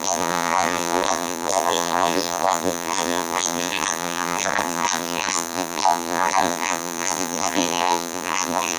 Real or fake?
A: fake